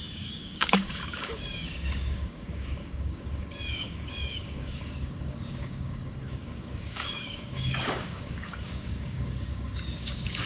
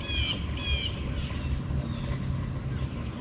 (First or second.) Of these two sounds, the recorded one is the second